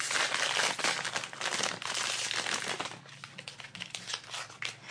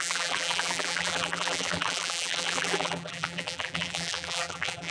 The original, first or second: first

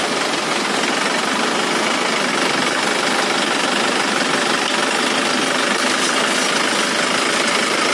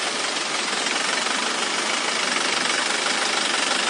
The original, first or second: first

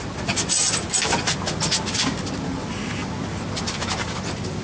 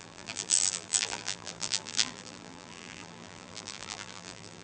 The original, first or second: first